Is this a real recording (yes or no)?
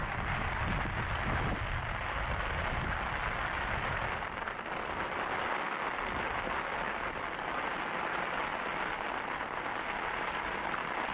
yes